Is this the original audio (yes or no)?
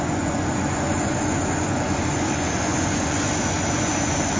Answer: no